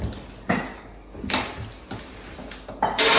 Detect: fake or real real